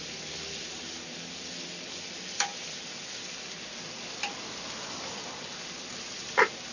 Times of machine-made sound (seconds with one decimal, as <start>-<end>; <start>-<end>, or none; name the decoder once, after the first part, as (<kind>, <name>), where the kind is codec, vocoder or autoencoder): none